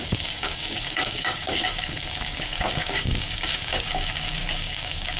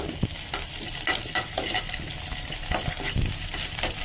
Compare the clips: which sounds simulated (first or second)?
first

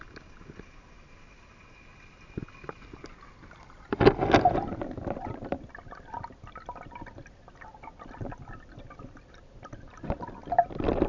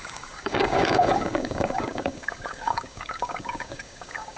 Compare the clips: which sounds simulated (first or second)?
second